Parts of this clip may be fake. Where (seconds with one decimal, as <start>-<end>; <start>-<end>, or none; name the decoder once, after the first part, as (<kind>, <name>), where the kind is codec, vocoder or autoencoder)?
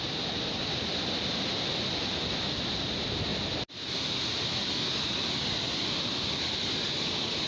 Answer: none